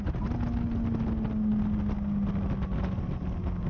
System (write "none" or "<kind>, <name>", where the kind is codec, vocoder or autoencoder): none